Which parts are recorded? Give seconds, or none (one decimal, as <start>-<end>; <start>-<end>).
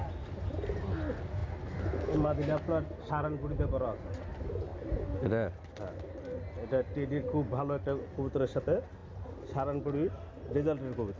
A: 0.0-11.2